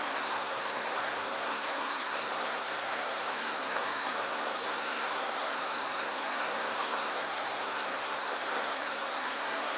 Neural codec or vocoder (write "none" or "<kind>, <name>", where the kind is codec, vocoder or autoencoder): codec, SNAC